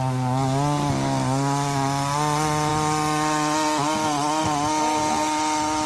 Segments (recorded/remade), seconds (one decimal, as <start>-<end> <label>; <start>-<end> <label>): 0.0-5.9 recorded